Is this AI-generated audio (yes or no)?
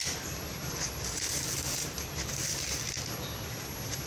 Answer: yes